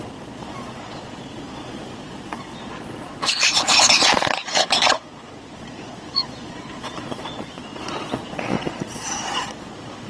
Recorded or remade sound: remade